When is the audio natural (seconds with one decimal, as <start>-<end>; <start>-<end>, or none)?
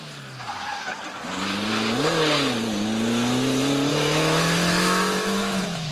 0.0-3.9